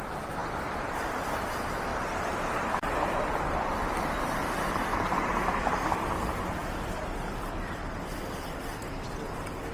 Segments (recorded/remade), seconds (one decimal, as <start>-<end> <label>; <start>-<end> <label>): 0.0-9.7 remade